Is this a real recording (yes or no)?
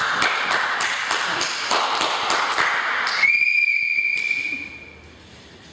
yes